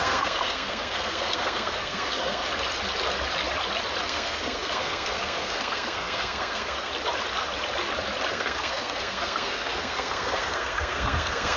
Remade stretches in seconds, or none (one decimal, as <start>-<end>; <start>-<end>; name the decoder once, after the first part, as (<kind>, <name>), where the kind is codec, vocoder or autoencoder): 0.0-2.4 (codec, SNAC); 4.0-6.9; 8.3-11.6